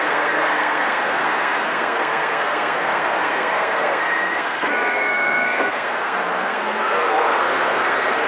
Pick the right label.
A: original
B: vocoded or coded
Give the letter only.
B